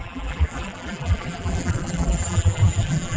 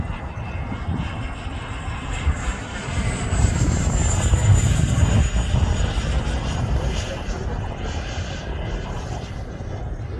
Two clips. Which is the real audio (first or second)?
second